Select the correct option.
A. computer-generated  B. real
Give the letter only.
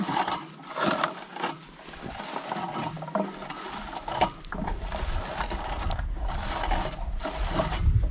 B